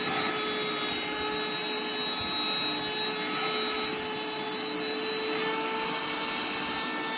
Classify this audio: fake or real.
real